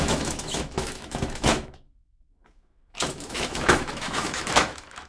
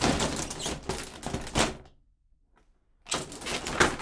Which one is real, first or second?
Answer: second